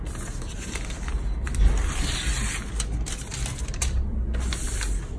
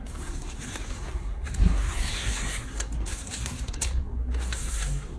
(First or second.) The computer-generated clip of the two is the second